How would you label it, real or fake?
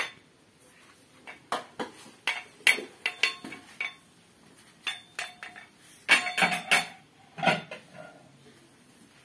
real